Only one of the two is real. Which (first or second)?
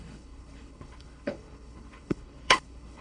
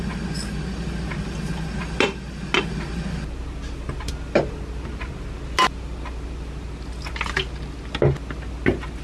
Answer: second